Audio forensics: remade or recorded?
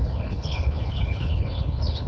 remade